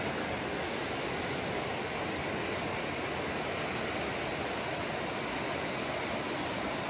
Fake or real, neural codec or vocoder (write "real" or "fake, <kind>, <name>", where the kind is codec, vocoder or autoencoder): real